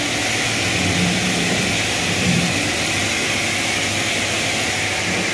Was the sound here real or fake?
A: real